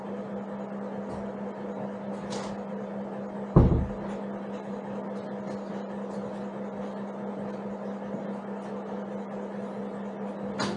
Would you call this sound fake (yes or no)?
no